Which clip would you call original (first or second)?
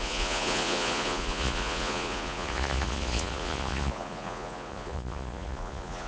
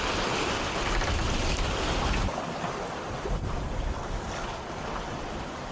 second